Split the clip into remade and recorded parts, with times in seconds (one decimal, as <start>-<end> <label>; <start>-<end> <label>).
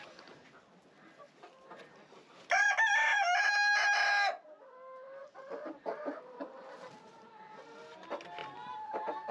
0.0-5.2 recorded; 5.2-7.0 remade; 7.0-8.4 recorded; 8.4-9.3 remade